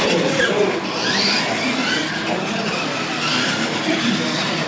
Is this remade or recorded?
recorded